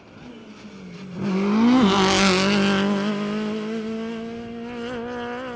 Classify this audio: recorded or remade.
recorded